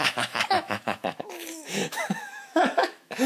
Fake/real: fake